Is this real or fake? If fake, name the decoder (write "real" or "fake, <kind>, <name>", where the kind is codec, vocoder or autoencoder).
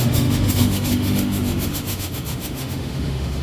fake, autoencoder, DAC-VAE